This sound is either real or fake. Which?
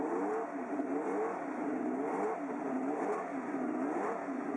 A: real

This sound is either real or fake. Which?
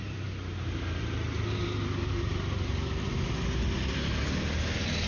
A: real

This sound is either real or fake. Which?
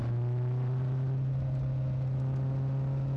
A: real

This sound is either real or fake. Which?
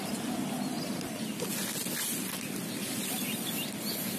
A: real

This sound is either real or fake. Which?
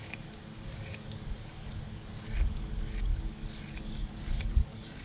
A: fake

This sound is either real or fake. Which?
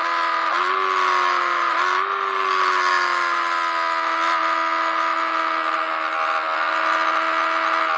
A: real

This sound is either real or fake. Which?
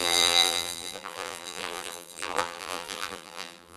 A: fake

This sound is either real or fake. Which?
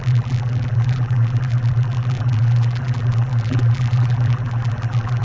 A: fake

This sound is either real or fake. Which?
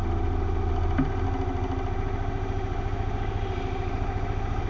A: real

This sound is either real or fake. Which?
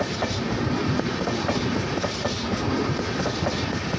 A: real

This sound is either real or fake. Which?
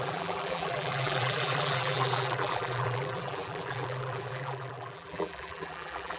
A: fake